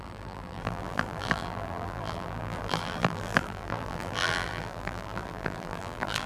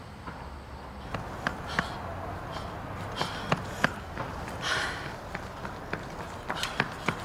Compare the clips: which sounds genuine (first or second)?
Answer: second